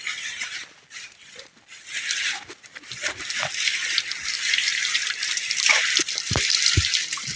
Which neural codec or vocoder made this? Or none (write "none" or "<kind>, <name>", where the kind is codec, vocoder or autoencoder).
none